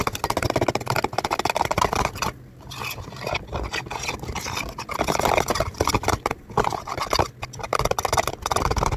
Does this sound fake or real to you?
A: real